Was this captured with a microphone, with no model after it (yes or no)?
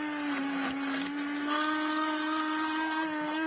yes